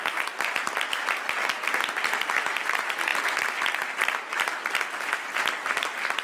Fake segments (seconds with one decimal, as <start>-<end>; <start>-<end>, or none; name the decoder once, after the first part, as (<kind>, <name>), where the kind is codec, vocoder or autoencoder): none

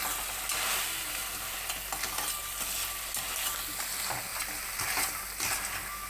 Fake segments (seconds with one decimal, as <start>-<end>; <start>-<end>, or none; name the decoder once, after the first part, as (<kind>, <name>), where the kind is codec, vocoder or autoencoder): none

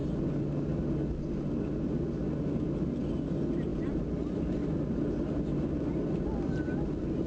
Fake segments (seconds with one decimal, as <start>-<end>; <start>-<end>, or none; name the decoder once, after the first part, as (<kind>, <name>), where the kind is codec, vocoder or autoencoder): 0.0-1.5 (vocoder, BigVGAN v2); 3.7-7.3

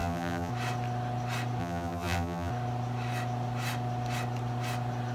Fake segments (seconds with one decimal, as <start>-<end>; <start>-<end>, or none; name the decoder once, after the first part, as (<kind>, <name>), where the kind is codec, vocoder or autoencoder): 0.0-0.5 (vocoder, BigVGAN v2); 1.6-2.5

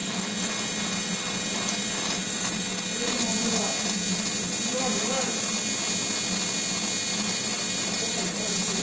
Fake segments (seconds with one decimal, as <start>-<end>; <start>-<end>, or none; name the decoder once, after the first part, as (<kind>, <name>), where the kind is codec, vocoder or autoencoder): 0.0-2.8 (vocoder, BigVGAN v2); 7.1-8.4

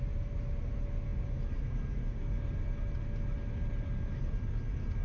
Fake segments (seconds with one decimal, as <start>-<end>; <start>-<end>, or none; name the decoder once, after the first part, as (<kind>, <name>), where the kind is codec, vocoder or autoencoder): none

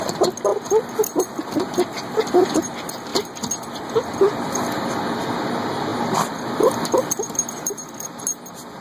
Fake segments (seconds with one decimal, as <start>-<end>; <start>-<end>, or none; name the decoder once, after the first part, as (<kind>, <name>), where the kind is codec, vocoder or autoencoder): 0.5-2.5 (vocoder, BigVGAN v2); 3.1-5.3; 5.9-8.2

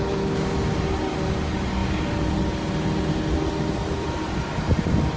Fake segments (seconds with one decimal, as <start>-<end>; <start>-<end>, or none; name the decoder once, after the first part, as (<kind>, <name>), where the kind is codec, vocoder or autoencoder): none